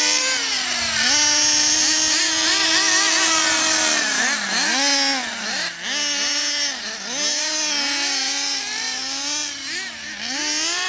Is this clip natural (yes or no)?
yes